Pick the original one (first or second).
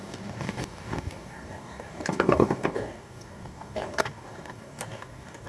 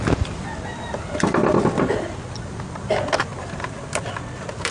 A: second